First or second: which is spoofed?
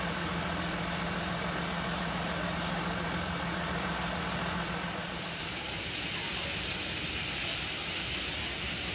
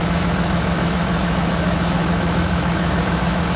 second